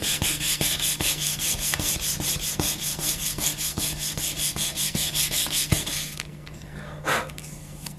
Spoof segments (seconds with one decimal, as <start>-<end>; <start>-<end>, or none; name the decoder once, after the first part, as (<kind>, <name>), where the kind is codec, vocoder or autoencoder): 0.0-1.9 (codec, SNAC); 2.5-8.0